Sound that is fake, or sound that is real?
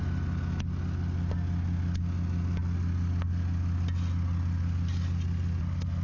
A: real